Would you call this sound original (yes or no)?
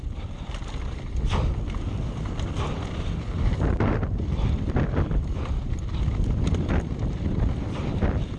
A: no